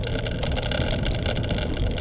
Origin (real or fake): real